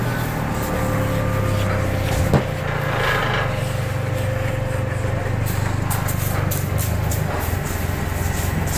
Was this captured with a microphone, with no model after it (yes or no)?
yes